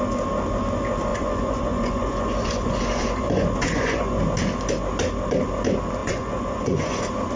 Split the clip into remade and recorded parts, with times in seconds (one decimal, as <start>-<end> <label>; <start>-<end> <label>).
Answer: 0.0-1.1 recorded; 1.1-4.2 remade; 4.2-6.0 recorded; 6.0-7.0 remade; 7.0-7.4 recorded